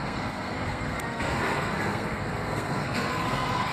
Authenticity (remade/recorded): remade